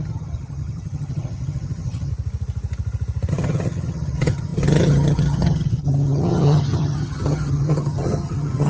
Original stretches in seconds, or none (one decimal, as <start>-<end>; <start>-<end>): 2.1-3.3